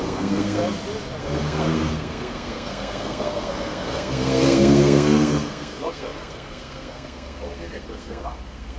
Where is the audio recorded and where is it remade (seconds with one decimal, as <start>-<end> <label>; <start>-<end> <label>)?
0.0-0.6 remade; 0.6-1.2 recorded; 1.2-8.8 remade